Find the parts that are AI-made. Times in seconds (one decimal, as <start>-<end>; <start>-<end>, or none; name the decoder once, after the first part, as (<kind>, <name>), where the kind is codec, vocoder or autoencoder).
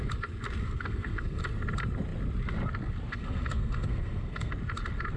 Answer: 0.6-1.4 (codec, SNAC); 3.1-4.5